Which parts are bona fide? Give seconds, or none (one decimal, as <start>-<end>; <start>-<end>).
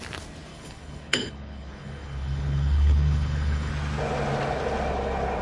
0.0-0.5; 3.7-5.4